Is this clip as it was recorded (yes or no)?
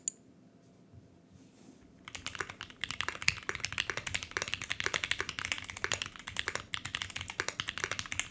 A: yes